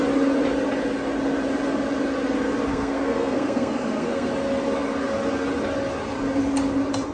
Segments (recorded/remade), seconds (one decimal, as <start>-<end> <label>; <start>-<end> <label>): 0.0-2.7 recorded; 2.7-4.3 remade; 4.3-7.1 recorded